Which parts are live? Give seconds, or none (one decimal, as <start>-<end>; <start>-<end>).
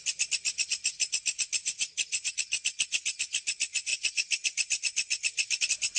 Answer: 0.0-1.6; 2.3-6.0